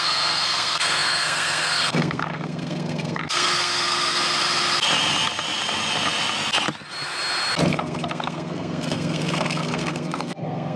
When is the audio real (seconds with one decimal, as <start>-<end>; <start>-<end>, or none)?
4.2-7.7